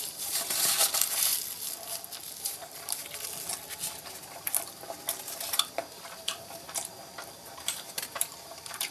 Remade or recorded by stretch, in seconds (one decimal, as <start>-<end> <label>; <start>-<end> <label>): 0.0-1.3 remade; 1.3-2.4 recorded; 2.4-3.0 remade; 3.0-5.5 recorded; 5.5-8.9 remade